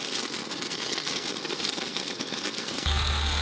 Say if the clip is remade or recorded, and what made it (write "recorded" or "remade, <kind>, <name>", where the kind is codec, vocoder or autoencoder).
remade, codec, SNAC